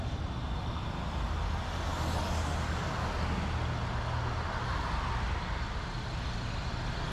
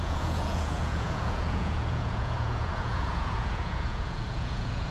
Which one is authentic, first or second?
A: first